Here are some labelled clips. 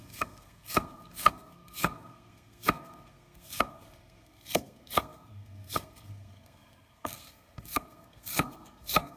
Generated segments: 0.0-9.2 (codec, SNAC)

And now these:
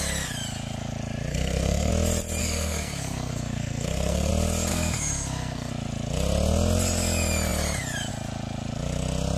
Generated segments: 1.3-1.9 (codec, SNAC); 2.4-4.3; 4.7-5.7

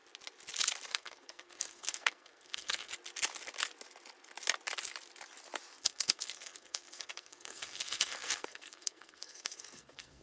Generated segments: 0.9-2.9 (codec, SNAC); 5.8-10.2

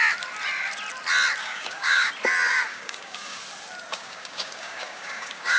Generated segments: 1.4-2.1 (codec, DAC); 2.7-3.4; 3.9-5.6

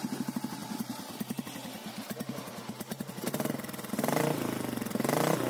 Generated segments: none

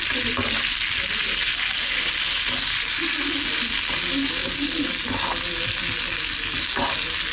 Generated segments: none